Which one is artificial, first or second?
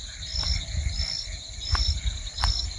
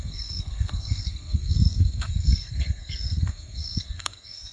second